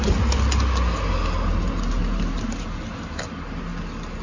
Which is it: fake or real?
real